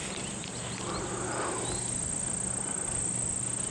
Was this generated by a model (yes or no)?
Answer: no